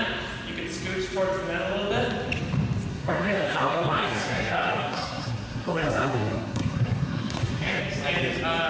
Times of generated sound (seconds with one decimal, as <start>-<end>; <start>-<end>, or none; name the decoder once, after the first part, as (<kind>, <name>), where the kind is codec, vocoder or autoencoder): 2.9-7.8 (codec, SNAC)